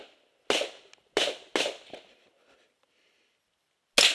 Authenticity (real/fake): real